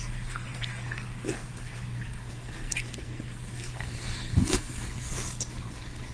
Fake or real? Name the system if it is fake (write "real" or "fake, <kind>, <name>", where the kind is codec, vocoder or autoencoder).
fake, codec, SNAC